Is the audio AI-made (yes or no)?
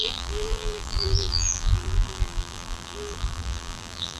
yes